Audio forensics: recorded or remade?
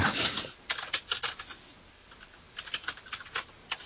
recorded